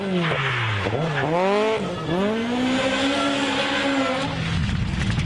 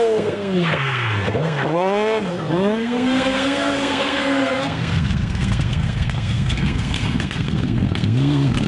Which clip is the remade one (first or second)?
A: second